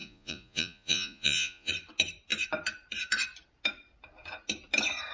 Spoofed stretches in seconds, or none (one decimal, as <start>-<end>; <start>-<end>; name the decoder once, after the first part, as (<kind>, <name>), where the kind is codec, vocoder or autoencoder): 0.0-1.7 (vocoder, Vocos)